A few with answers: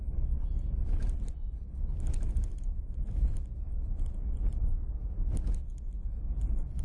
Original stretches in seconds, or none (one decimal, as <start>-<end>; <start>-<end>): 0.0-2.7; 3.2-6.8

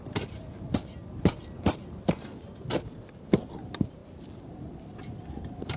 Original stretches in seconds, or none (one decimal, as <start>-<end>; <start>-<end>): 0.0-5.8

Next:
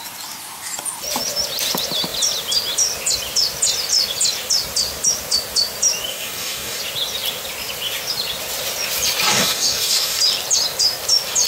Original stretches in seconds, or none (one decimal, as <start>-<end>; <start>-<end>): 0.0-6.1; 6.8-9.3; 10.2-11.5

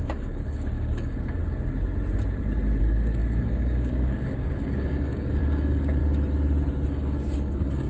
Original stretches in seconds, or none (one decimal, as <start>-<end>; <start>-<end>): 1.4-2.8; 6.0-6.9

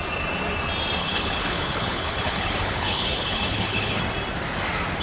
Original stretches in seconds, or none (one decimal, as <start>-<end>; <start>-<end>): 0.0-1.0; 4.0-5.0